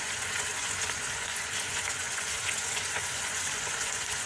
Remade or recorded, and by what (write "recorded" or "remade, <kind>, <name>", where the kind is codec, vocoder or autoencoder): remade, vocoder, Vocos